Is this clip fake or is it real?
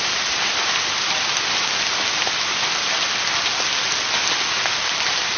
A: real